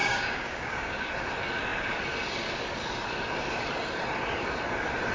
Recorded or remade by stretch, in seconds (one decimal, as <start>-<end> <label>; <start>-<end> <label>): 0.0-1.1 remade; 1.1-5.1 recorded